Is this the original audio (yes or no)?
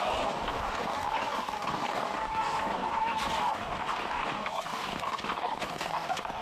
no